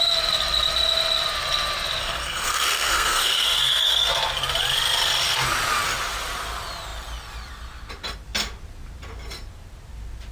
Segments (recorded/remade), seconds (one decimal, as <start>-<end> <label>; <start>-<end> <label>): 0.0-2.0 recorded; 2.0-4.1 remade; 4.1-10.3 recorded